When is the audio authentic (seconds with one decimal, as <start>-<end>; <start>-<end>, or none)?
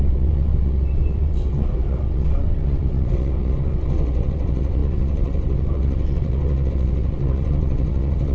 none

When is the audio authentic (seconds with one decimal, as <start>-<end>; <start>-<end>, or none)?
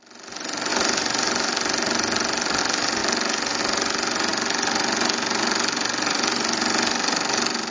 0.0-7.7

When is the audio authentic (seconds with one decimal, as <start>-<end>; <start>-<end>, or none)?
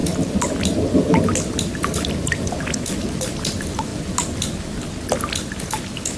0.0-6.2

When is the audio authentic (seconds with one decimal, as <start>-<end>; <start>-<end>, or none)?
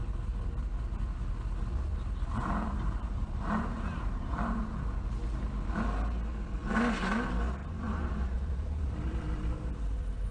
0.0-1.9; 4.8-7.6; 9.7-10.3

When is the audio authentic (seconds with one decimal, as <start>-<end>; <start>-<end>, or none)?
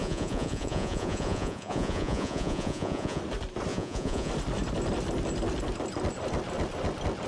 3.2-3.7; 4.3-7.3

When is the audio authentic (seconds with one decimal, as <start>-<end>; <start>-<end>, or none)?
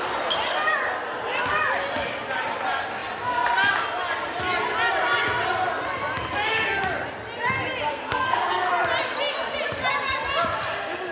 0.0-7.9; 8.7-11.1